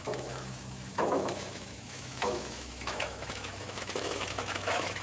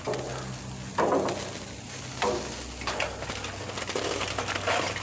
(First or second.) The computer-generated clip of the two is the first